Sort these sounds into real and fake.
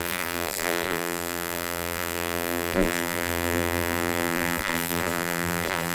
fake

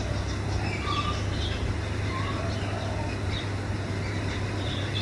real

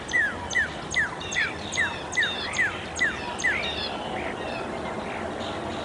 real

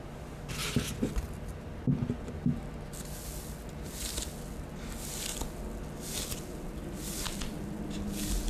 real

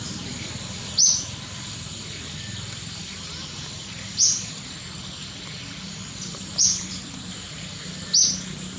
real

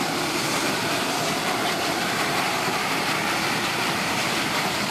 fake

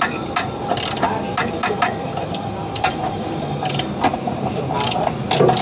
fake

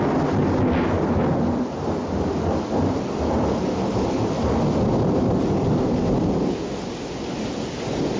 real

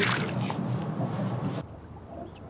fake